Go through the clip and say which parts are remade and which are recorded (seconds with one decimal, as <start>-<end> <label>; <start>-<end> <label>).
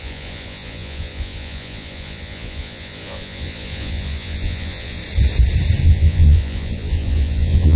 0.0-5.0 remade; 5.0-5.8 recorded; 5.8-7.8 remade